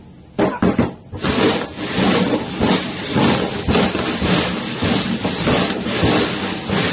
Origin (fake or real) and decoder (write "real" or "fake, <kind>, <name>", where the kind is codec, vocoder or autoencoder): real